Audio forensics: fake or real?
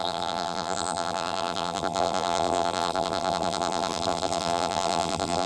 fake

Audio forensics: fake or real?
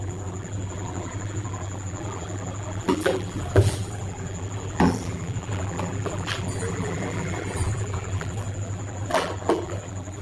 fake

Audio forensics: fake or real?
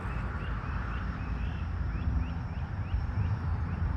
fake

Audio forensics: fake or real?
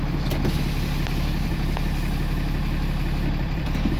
fake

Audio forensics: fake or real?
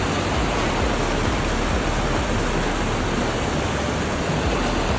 real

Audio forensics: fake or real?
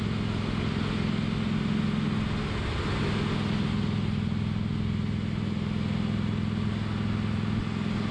real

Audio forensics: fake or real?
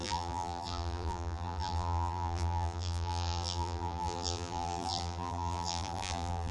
fake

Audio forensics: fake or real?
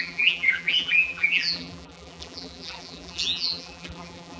fake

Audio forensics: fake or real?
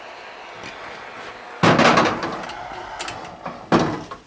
real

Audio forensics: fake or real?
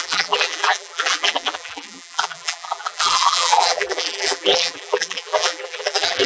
fake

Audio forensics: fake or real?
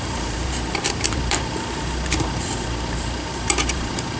fake